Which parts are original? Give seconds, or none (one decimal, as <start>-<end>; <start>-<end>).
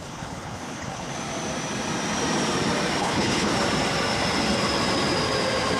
1.1-3.0; 3.5-5.8